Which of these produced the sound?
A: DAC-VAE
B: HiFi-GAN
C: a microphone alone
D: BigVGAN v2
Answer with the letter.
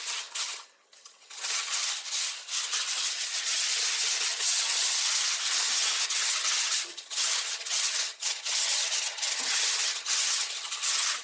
B